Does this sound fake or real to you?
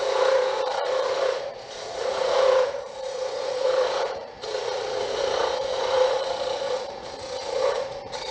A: fake